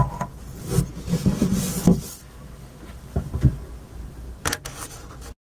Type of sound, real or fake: real